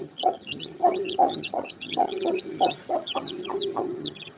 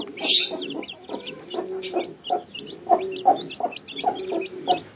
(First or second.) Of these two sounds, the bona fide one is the second